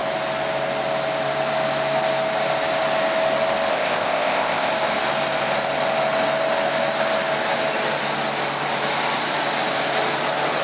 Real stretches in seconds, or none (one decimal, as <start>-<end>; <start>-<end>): 0.0-3.7; 4.7-10.6